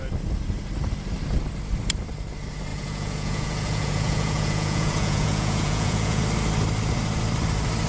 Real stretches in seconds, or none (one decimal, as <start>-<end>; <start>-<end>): 0.0-2.7; 6.2-7.9